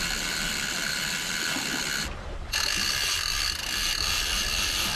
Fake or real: fake